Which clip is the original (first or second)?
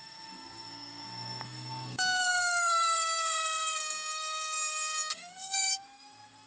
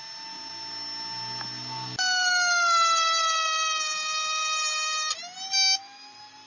second